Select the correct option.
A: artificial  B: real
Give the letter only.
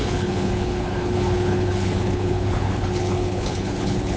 A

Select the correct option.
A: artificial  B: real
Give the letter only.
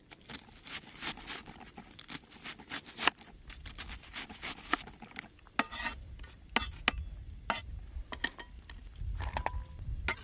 B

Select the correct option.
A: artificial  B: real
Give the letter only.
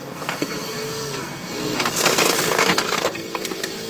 A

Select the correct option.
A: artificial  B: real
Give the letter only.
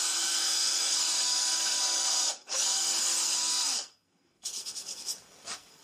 A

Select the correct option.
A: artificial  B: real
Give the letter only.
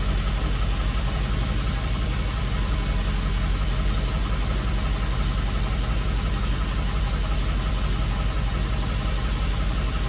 B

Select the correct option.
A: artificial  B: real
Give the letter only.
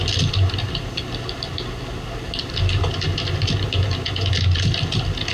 B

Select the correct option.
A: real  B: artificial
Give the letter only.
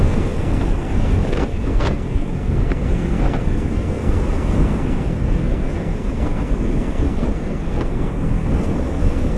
B